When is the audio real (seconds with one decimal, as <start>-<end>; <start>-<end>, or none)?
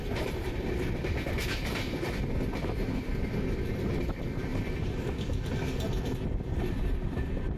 0.0-7.6